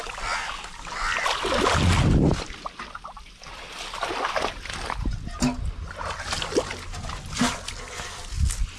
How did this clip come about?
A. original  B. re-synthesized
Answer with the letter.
A